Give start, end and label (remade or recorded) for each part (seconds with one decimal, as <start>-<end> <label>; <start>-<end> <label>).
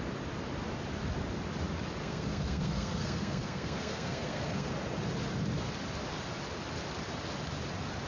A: 0.0-2.0 recorded; 2.0-4.7 remade; 4.7-8.1 recorded